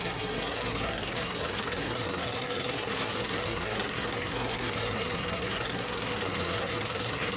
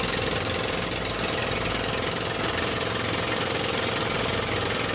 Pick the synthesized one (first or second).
first